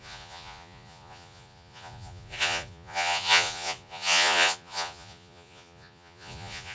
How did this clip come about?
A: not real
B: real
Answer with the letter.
A